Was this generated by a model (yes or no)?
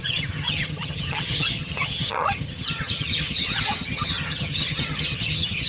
yes